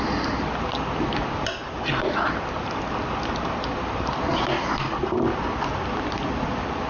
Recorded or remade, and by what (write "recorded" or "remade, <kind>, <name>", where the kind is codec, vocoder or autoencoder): recorded